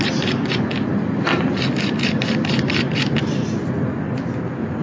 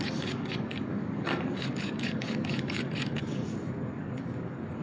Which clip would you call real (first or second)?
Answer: first